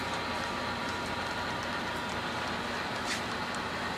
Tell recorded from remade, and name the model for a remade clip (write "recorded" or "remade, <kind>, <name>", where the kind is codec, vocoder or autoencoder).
recorded